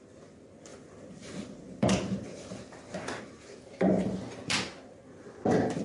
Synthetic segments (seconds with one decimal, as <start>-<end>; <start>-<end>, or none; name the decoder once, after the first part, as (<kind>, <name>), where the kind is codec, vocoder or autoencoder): 0.7-4.2 (vocoder, BigVGAN v2)